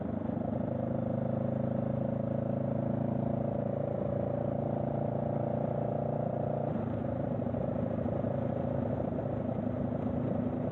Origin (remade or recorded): recorded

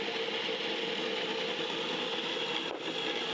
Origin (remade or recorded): recorded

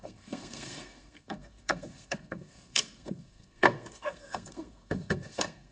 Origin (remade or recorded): remade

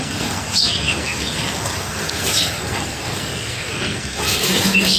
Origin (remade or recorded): remade